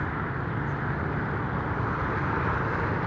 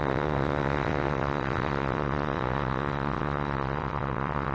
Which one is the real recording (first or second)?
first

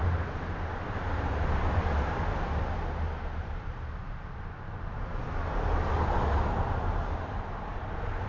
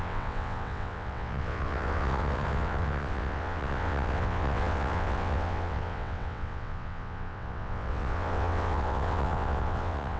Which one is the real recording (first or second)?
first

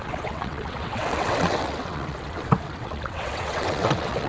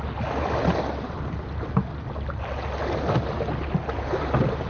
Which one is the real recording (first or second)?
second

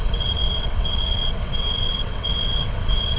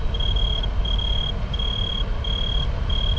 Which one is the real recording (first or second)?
second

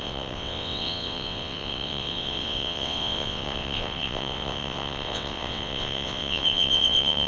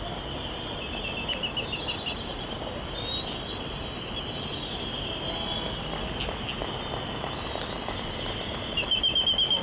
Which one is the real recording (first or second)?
second